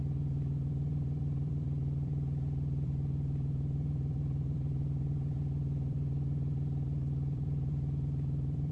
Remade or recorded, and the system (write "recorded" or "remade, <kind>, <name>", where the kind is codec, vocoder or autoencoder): remade, vocoder, BigVGAN v2